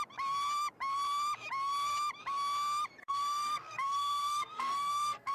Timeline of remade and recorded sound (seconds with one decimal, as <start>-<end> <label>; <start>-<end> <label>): 0.0-3.0 recorded; 3.0-5.3 remade